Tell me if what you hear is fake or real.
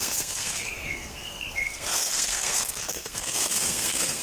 fake